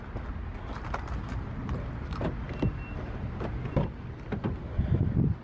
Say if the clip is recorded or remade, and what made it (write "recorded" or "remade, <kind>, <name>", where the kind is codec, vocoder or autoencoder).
recorded